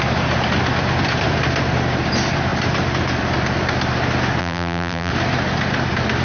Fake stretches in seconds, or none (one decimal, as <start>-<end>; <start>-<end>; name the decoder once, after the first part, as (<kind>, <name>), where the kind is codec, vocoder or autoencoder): 4.4-5.1 (vocoder, BigVGAN v2)